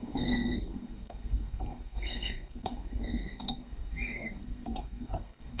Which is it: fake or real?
fake